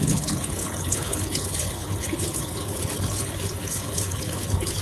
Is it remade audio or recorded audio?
remade